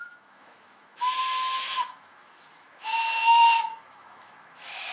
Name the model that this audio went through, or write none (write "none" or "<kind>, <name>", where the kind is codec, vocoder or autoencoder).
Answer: autoencoder, DAC-VAE